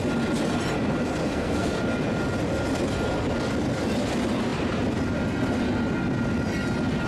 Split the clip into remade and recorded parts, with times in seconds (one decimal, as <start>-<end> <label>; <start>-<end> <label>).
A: 0.0-1.2 recorded; 1.2-1.8 remade; 1.8-7.1 recorded